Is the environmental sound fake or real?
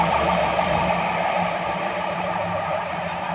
fake